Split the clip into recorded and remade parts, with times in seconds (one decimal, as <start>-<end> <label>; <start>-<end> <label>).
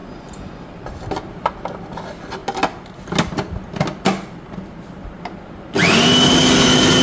0.0-0.5 remade; 0.5-7.0 recorded